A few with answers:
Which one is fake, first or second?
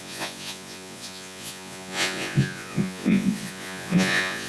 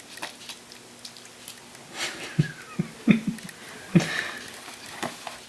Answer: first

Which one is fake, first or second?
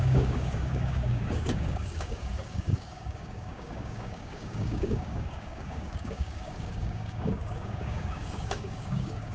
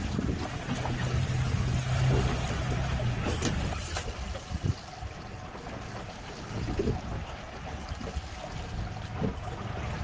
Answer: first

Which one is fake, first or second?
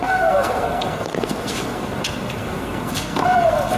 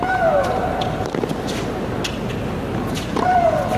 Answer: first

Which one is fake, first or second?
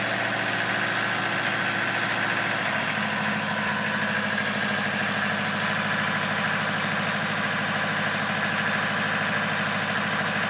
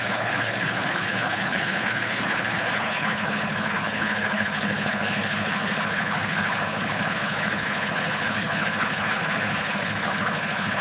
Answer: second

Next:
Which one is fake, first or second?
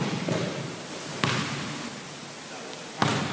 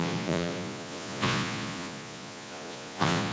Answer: second